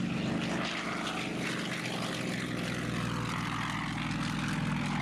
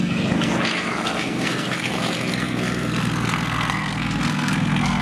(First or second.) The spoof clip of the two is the second